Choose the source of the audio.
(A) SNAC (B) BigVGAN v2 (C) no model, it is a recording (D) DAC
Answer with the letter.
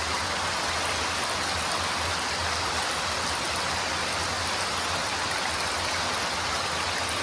C